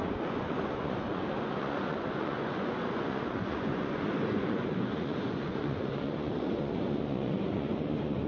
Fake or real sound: fake